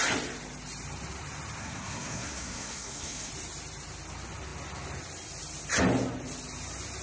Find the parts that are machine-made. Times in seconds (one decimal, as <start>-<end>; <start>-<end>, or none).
1.6-3.3